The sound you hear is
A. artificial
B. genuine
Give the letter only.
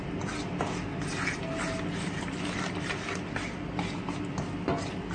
B